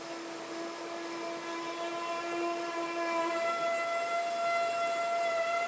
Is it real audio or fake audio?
real